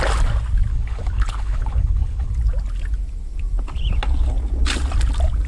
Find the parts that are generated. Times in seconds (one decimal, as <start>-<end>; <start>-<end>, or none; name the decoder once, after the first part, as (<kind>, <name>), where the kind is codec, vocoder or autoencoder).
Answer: 0.7-2.3 (codec, HILCodec)